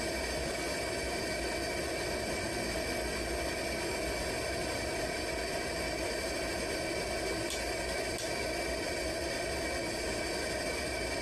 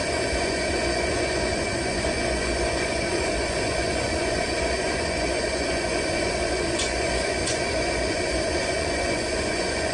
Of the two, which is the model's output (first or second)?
second